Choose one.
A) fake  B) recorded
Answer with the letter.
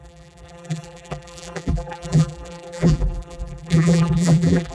A